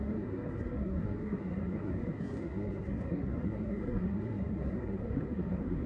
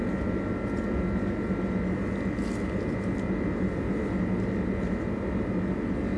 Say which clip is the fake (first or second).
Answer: first